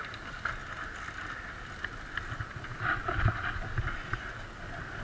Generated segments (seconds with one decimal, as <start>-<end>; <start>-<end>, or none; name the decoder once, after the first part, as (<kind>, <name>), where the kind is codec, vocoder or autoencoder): none